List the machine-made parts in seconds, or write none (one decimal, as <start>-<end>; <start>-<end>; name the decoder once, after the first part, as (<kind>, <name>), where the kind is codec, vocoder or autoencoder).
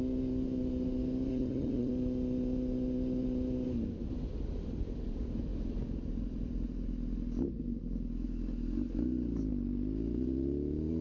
1.3-1.9 (vocoder, HiFi-GAN)